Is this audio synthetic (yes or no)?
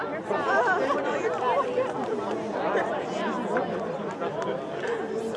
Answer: no